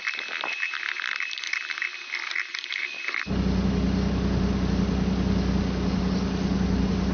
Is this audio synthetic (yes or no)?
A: no